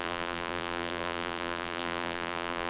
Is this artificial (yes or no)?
yes